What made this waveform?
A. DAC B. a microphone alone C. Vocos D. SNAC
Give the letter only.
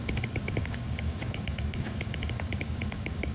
A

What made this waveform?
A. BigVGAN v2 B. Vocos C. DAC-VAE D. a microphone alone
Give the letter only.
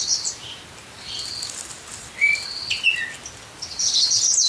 D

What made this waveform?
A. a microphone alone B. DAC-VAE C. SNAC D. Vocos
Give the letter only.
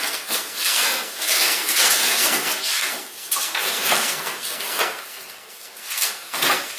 C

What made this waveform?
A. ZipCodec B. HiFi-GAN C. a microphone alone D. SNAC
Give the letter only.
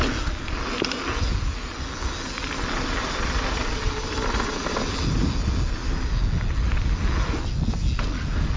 C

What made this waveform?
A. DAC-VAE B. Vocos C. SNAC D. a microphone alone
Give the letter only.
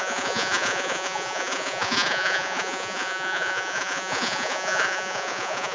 B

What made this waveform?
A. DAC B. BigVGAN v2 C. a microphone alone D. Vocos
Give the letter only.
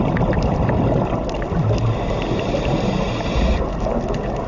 C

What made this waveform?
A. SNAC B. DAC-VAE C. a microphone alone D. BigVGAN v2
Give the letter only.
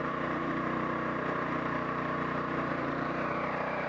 D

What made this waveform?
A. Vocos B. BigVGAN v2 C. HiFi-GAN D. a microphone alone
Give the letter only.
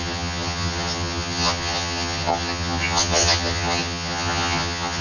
C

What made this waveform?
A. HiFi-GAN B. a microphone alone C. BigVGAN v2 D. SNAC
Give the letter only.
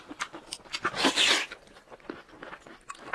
B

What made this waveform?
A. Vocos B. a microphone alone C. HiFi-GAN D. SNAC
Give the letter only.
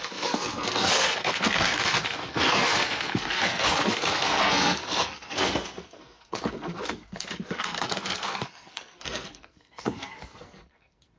D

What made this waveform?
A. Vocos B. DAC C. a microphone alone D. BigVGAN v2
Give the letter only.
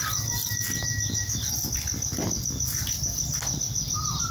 C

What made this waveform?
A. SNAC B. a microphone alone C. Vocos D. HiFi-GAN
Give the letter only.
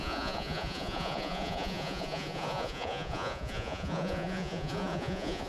C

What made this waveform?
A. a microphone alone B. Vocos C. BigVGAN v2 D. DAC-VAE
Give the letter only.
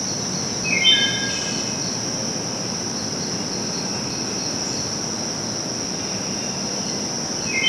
A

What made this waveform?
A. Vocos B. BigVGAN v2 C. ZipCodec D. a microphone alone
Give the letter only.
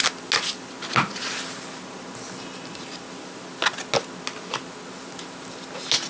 D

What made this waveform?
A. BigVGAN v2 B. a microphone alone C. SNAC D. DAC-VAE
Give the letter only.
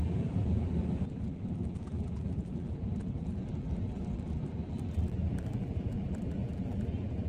A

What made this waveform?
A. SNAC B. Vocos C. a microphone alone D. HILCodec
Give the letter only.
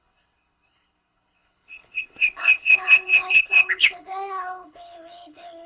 D